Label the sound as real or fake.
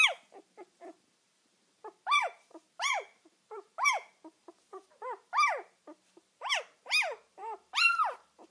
fake